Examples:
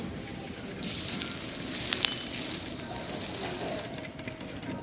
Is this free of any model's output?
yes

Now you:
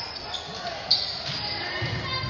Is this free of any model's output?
yes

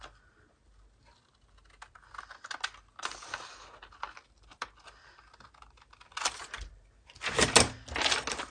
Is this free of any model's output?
yes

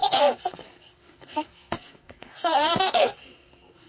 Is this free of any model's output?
no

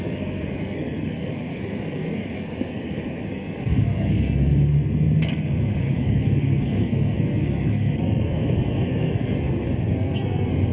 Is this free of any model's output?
no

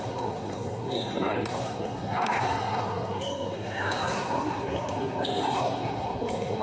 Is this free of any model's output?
no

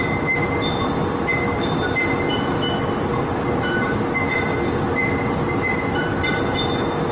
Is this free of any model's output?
yes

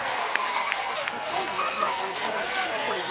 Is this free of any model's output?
no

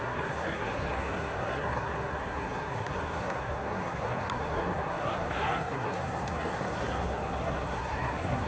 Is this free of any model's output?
no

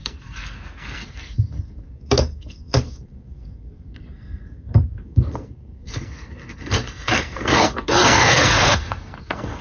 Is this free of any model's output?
no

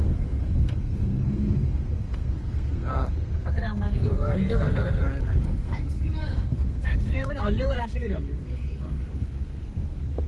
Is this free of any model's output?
no